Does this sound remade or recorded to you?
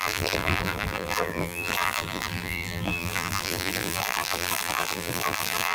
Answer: remade